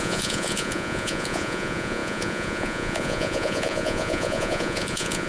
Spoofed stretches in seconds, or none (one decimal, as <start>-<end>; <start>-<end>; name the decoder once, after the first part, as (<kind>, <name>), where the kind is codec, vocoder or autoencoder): 0.0-5.3 (vocoder, Vocos)